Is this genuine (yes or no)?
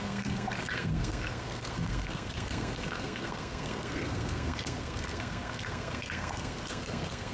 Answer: no